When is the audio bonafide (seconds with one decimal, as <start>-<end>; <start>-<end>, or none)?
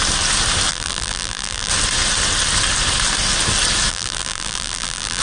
0.0-0.7; 1.7-3.9